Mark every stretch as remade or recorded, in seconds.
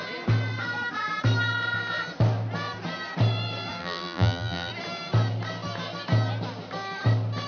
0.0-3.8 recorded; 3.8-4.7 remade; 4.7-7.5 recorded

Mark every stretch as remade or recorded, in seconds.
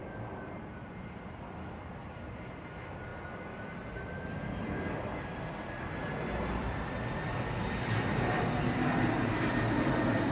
0.0-3.1 remade; 3.1-4.9 recorded; 4.9-10.3 remade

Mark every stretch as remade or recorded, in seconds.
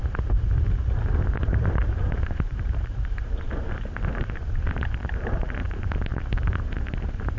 0.0-1.1 recorded; 1.1-7.4 remade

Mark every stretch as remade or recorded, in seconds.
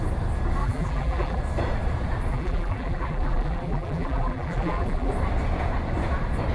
0.0-0.6 recorded; 0.6-1.4 remade; 1.4-2.3 recorded; 2.3-5.1 remade; 5.1-6.5 recorded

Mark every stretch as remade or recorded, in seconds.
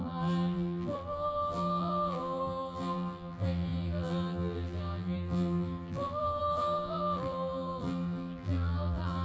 0.0-9.2 remade